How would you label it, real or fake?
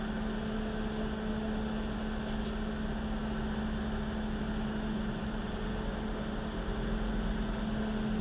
real